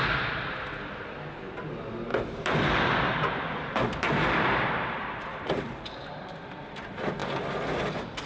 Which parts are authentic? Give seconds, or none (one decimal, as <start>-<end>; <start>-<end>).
0.0-2.1; 4.6-5.3; 5.9-8.3